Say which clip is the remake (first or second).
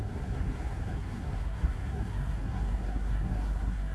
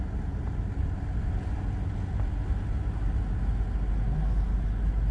first